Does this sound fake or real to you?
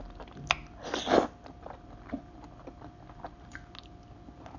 real